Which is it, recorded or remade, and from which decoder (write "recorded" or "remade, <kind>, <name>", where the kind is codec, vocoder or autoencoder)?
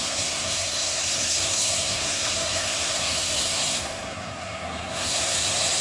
remade, codec, SNAC